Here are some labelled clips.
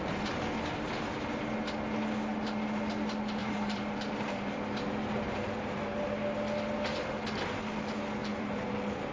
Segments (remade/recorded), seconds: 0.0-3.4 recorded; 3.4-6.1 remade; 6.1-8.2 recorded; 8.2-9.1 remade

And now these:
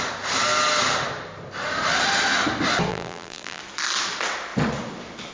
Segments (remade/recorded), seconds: 0.0-2.9 recorded; 2.9-3.6 remade; 3.6-5.3 recorded